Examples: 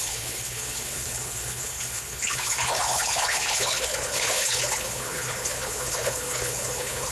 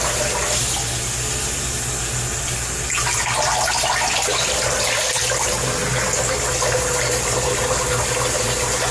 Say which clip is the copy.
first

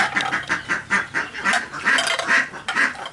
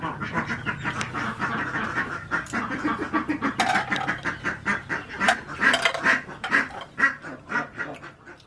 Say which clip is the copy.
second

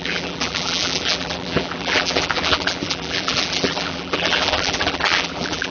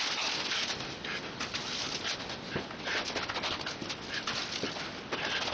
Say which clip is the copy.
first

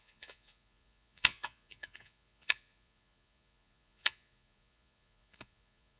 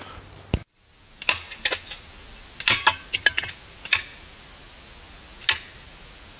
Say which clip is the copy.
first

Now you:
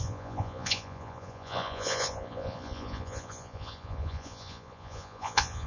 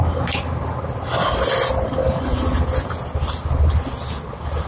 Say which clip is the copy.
first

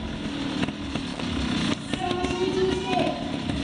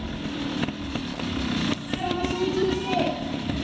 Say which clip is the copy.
second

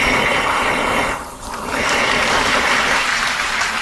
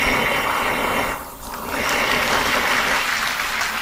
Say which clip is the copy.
first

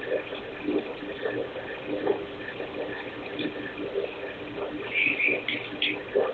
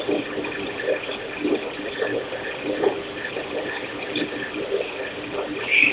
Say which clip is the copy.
second